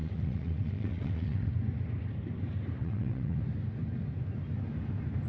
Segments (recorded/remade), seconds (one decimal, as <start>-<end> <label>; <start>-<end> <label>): 0.0-1.5 remade; 1.5-2.8 recorded; 2.8-3.4 remade; 3.4-5.3 recorded